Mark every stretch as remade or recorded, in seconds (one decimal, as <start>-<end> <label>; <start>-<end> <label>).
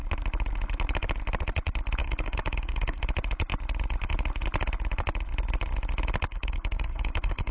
0.0-2.0 recorded; 2.0-3.0 remade; 3.0-6.3 recorded; 6.3-7.5 remade